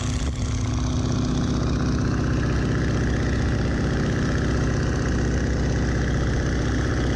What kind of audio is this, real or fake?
real